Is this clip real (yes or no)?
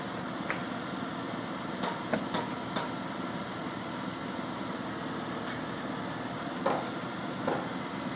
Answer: yes